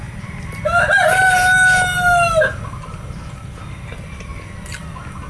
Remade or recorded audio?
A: recorded